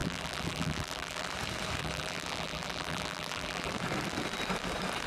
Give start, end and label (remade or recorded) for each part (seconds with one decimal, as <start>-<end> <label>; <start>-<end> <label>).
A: 0.0-1.3 remade; 1.3-1.8 recorded; 1.8-3.7 remade; 3.7-5.1 recorded